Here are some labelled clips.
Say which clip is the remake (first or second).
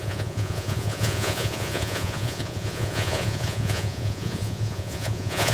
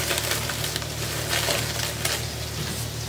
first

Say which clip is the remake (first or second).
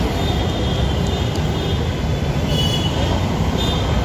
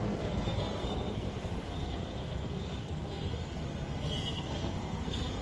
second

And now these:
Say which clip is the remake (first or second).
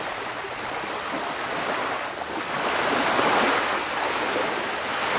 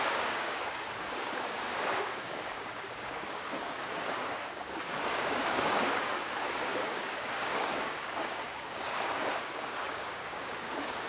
second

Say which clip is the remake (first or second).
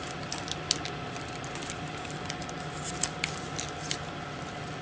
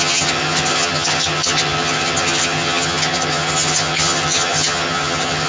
second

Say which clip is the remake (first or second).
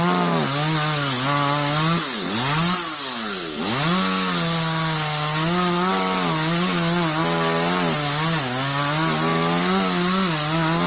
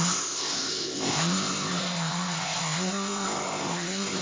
second